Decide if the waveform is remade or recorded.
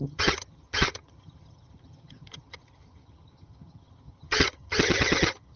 remade